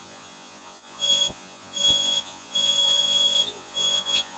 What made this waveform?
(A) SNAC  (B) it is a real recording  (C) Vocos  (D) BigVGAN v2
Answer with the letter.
C